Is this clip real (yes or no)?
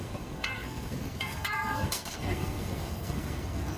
no